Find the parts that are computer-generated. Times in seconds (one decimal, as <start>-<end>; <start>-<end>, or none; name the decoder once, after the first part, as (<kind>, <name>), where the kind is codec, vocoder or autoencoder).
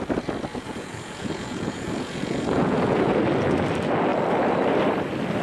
0.5-3.2 (vocoder, Vocos)